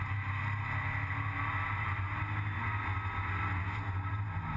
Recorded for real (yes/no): yes